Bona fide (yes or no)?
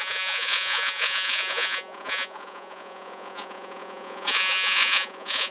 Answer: no